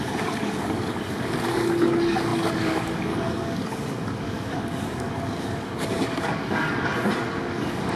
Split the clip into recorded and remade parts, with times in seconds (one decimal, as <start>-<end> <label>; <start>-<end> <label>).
0.0-6.9 remade; 6.9-7.4 recorded; 7.4-8.0 remade